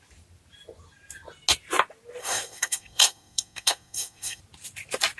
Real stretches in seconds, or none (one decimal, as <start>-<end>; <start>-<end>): 0.0-2.2; 4.4-5.2